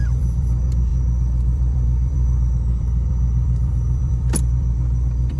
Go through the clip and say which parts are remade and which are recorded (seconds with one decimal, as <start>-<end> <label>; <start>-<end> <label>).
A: 0.0-5.4 remade